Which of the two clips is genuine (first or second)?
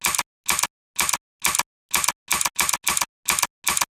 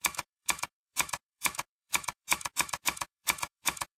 first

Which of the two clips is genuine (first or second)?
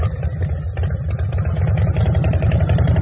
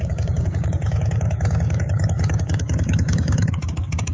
first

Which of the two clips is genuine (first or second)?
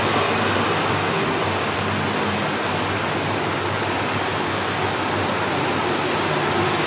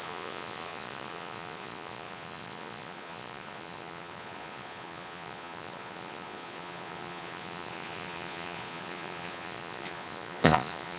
first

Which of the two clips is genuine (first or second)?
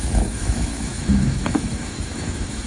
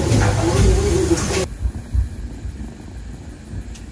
second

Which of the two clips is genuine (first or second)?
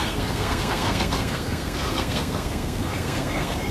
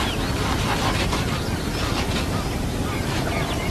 second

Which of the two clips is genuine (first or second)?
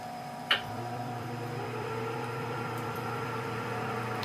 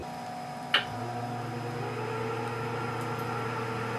second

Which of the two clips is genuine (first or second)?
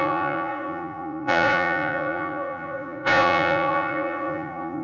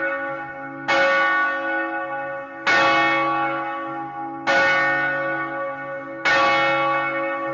second